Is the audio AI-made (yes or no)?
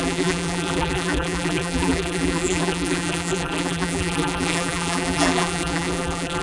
yes